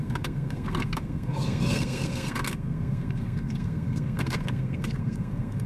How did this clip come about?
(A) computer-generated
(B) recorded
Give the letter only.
A